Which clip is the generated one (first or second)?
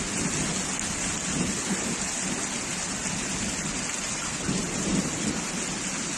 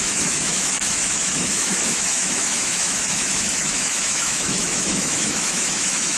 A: second